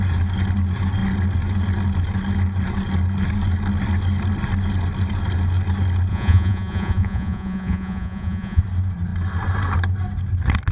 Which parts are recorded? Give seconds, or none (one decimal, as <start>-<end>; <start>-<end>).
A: 0.0-6.1; 8.6-10.7